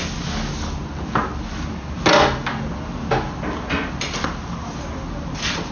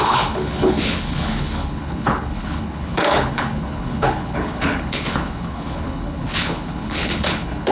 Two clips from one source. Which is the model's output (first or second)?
second